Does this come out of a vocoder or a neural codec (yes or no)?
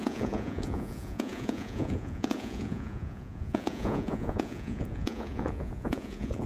yes